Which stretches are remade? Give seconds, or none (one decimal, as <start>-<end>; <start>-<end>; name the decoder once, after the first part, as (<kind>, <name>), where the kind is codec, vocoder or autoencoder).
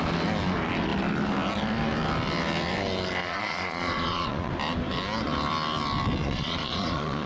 3.2-4.5 (vocoder, Vocos); 6.2-7.3